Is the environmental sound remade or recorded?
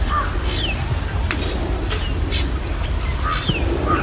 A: recorded